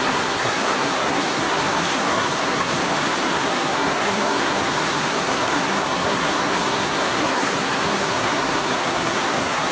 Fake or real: fake